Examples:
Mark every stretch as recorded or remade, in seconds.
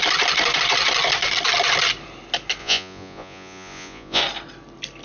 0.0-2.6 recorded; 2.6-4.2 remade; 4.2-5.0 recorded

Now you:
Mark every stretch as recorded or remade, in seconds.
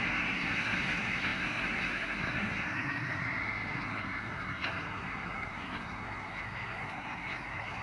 0.0-7.8 remade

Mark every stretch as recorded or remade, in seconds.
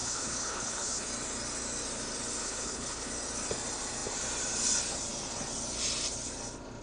0.0-1.1 remade; 1.1-2.4 recorded; 2.4-3.1 remade; 3.1-6.8 recorded